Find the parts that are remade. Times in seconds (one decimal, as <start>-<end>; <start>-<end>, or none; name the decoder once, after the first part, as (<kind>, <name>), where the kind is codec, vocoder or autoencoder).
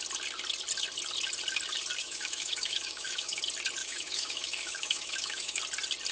2.0-3.4 (autoencoder, DAC-VAE); 3.8-5.6